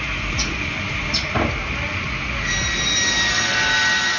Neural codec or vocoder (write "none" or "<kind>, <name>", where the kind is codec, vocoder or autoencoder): none